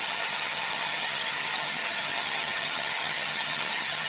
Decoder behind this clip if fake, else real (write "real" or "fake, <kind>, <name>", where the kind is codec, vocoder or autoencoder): fake, vocoder, HiFi-GAN